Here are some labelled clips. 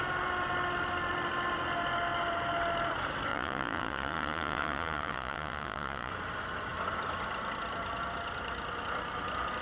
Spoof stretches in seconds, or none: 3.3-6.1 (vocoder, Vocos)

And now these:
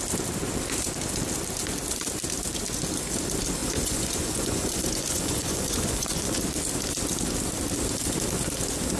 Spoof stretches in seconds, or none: 3.6-6.4 (vocoder, Vocos)

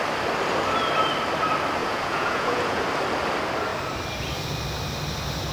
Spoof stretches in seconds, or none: 1.8-2.8 (vocoder, Vocos)

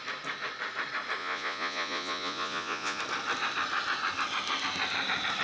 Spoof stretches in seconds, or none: 1.2-3.0 (vocoder, Vocos)